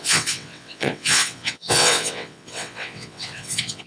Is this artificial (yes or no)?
yes